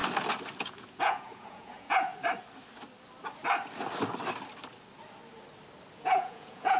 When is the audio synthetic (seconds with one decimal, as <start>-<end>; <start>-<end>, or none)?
0.6-2.1; 6.0-6.8